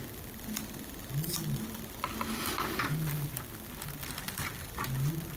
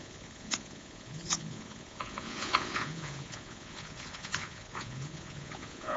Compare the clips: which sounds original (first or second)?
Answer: first